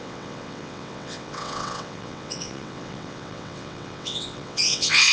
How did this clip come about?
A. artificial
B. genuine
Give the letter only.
A